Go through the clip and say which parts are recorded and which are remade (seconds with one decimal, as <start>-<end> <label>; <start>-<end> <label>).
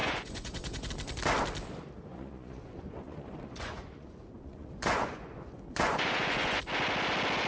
0.0-0.9 remade; 0.9-2.1 recorded; 2.1-6.6 remade; 6.6-7.5 recorded